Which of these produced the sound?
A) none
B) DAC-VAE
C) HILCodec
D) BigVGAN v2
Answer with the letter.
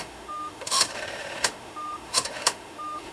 B